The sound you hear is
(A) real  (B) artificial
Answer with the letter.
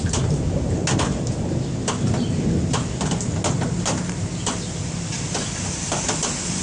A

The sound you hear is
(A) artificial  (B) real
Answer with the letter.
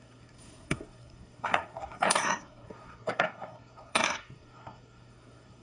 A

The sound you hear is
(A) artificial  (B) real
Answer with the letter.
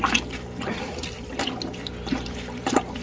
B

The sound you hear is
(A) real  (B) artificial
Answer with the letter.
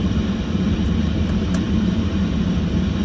A